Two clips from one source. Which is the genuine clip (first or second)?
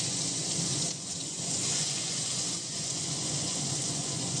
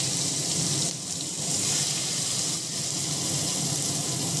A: second